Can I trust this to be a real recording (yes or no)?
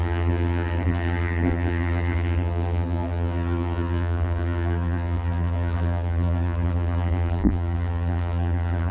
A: no